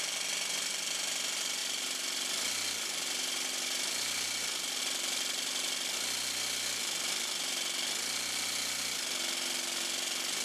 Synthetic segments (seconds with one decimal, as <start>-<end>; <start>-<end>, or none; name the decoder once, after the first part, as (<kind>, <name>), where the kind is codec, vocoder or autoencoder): 1.6-4.8 (vocoder, BigVGAN v2)